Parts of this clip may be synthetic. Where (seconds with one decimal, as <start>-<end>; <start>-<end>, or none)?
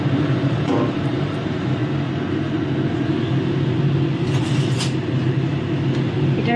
0.0-1.8; 4.4-6.6